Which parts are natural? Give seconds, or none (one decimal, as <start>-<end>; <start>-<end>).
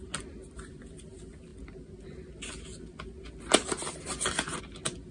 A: 0.0-5.1